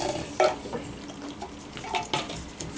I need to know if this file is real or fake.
real